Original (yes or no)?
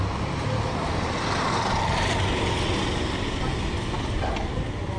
yes